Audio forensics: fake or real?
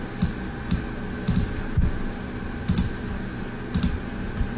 real